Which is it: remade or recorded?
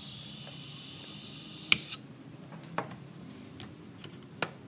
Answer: recorded